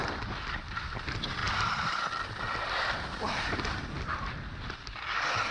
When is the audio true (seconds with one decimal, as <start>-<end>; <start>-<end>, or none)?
0.0-5.5